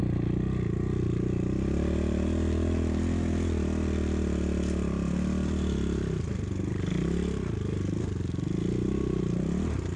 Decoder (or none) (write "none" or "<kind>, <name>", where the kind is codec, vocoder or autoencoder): none